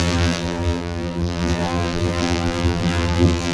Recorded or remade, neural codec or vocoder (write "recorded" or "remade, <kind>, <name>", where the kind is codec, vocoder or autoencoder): remade, vocoder, BigVGAN v2